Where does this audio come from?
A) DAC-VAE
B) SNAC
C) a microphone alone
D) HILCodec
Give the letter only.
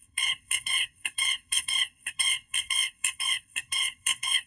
B